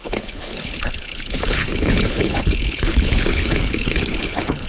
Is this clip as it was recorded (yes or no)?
no